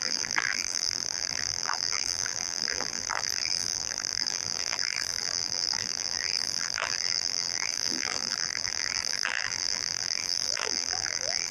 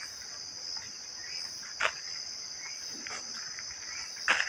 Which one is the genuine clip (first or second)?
second